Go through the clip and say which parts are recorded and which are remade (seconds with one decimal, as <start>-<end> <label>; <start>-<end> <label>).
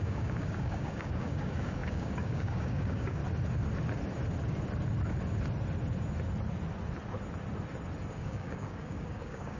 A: 0.0-3.2 remade; 3.2-8.1 recorded; 8.1-9.6 remade